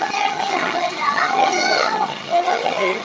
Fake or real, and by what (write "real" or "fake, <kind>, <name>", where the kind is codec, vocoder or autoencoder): fake, vocoder, HiFi-GAN